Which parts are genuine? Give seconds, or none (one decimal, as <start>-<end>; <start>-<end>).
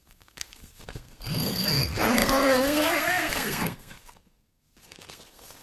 none